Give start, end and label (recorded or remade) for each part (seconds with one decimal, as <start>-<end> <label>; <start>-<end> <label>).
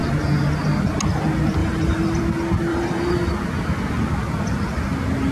0.0-1.6 recorded; 1.6-2.2 remade; 2.2-2.7 recorded; 2.7-3.3 remade; 3.3-5.3 recorded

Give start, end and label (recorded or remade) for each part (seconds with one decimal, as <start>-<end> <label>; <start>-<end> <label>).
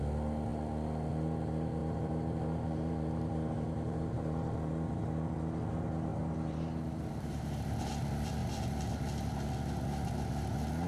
0.0-1.8 recorded; 1.8-5.0 remade; 5.0-6.1 recorded; 6.1-7.9 remade; 7.9-10.9 recorded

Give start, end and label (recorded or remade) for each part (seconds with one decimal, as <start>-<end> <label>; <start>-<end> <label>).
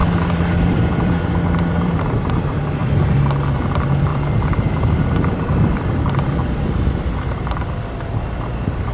0.0-2.0 remade; 2.0-2.8 recorded; 2.8-3.6 remade; 3.6-4.1 recorded; 4.1-7.1 remade; 7.1-8.9 recorded